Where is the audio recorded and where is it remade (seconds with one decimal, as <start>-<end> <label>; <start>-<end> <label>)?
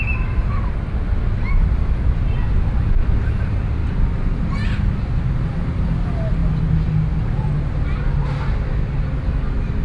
0.0-9.8 recorded